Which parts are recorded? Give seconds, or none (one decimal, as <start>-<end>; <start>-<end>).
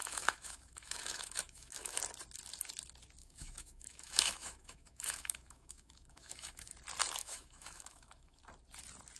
2.0-3.2; 6.7-7.2; 8.4-9.2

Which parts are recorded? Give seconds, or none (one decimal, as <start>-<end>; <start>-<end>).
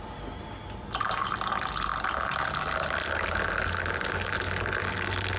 0.0-5.4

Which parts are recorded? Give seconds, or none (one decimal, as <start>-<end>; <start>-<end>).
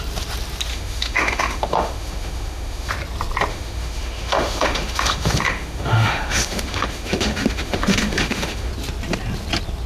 0.0-0.7; 2.9-3.5; 8.7-9.9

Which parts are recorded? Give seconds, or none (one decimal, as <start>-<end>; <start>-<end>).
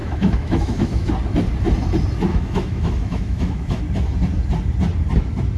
1.1-2.3; 3.8-5.6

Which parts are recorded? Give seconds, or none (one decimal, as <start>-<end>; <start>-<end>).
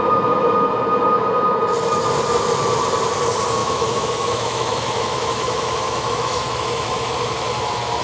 0.0-3.6; 7.1-8.0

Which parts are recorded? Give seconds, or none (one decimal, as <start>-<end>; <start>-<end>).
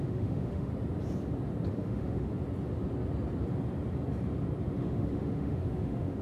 0.7-1.7; 2.3-4.8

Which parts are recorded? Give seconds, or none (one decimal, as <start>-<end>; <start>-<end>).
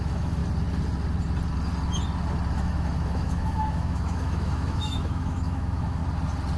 0.4-2.6; 6.0-6.6